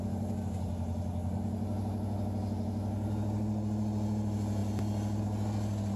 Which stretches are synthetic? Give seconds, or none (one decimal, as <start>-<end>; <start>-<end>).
none

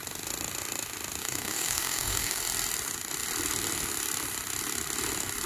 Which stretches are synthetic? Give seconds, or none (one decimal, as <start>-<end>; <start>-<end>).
1.2-2.4

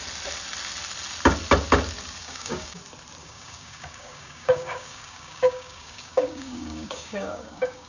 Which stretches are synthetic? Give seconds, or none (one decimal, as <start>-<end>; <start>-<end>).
2.2-2.8; 3.2-7.9